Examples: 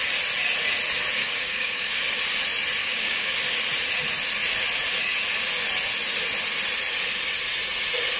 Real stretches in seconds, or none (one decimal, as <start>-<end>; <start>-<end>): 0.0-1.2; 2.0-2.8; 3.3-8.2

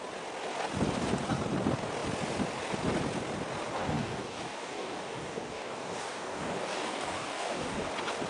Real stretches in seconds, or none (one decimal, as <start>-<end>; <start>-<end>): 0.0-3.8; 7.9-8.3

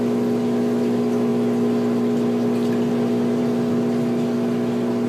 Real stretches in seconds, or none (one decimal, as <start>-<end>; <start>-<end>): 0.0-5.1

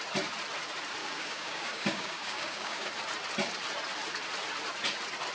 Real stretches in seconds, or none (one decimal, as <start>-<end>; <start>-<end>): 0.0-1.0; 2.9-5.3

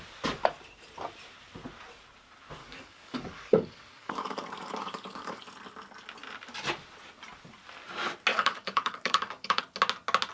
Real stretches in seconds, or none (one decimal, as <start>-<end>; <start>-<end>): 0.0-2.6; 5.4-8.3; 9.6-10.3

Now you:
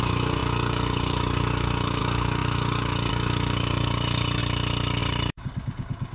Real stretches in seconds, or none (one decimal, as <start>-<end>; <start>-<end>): 4.4-5.0